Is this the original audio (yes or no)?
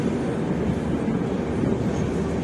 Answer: yes